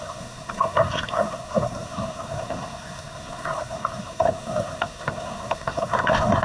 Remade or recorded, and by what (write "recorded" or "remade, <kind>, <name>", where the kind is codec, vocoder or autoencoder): remade, codec, SNAC